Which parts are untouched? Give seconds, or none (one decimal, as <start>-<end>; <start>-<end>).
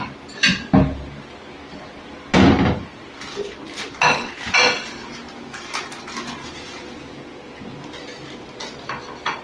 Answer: 0.0-9.4